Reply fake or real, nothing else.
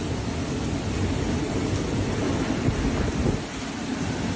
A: real